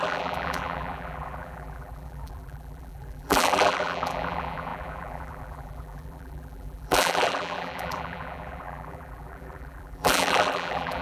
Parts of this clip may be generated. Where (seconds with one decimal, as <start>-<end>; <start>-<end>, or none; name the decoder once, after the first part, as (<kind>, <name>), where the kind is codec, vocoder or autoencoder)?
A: 0.0-11.0 (vocoder, BigVGAN v2)